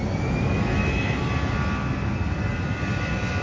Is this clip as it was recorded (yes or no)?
yes